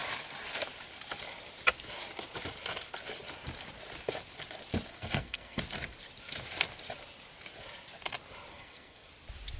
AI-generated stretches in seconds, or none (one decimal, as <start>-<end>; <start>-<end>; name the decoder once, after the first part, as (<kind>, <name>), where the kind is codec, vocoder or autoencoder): 4.9-5.6 (codec, SNAC); 8.5-9.1